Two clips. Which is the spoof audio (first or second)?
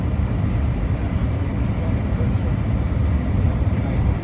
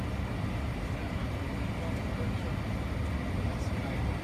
first